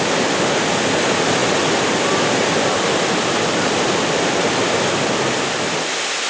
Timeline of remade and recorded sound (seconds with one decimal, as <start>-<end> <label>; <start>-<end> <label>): 0.0-6.3 recorded